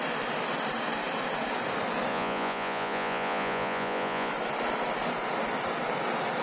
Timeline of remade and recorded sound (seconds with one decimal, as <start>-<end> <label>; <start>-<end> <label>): 0.0-2.1 recorded; 2.1-4.3 remade; 4.3-6.4 recorded